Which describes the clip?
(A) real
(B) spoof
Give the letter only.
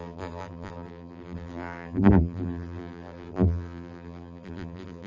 B